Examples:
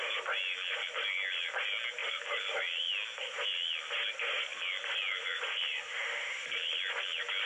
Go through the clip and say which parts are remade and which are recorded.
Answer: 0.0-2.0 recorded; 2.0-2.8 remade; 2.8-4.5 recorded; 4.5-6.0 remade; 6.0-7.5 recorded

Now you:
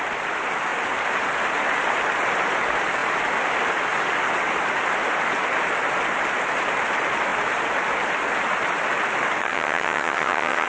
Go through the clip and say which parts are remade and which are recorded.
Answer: 0.0-9.4 recorded; 9.4-10.7 remade

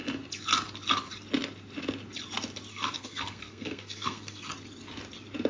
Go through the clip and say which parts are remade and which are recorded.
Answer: 0.0-2.7 recorded; 2.7-4.5 remade; 4.5-5.5 recorded

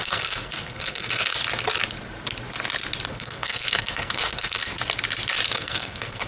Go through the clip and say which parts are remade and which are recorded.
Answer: 0.0-1.3 remade; 1.3-3.1 recorded; 3.1-4.7 remade; 4.7-5.5 recorded; 5.5-6.3 remade

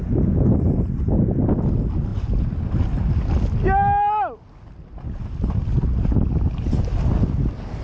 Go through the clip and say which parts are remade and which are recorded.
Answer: 0.0-7.8 recorded

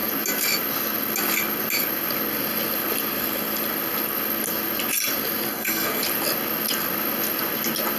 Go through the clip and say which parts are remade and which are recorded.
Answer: 0.0-5.5 recorded; 5.5-6.0 remade; 6.0-8.0 recorded

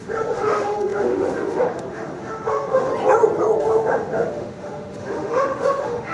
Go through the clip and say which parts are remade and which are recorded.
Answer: 0.0-2.9 remade; 2.9-3.6 recorded; 3.6-6.1 remade